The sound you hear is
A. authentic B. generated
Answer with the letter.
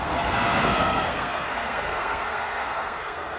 B